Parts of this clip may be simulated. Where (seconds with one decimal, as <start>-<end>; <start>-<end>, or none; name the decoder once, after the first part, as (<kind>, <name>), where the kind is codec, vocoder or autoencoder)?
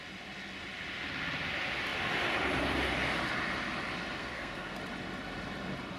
4.2-4.8 (codec, SNAC)